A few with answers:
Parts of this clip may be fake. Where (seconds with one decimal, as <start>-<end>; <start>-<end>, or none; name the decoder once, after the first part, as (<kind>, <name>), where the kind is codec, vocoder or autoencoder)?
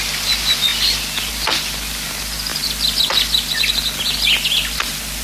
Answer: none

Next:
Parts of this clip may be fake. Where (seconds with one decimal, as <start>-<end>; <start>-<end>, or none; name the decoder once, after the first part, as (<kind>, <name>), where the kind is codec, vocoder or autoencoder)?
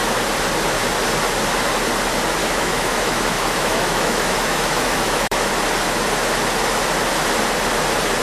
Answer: 2.4-5.5 (autoencoder, DAC-VAE)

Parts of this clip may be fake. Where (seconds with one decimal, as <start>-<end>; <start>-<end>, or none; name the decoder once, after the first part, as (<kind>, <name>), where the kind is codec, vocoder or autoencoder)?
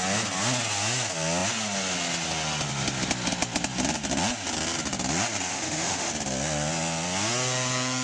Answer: 5.5-6.1 (autoencoder, DAC-VAE)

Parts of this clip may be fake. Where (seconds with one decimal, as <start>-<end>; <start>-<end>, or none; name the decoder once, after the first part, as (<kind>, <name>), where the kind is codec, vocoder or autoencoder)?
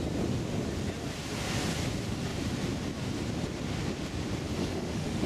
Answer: 4.6-5.3 (autoencoder, DAC-VAE)